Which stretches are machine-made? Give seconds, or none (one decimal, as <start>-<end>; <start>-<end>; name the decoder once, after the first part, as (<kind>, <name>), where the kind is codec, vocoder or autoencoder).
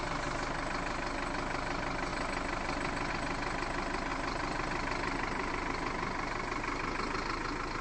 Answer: 4.1-5.5 (vocoder, BigVGAN v2)